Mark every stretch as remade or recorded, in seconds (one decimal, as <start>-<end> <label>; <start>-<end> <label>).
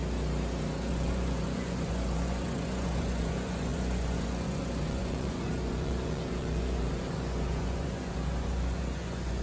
0.0-0.9 recorded; 0.9-9.4 remade